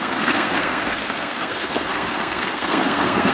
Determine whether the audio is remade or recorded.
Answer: remade